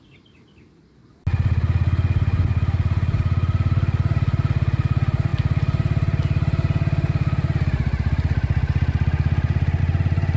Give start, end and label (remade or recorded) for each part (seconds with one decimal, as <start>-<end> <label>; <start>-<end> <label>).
0.0-10.4 recorded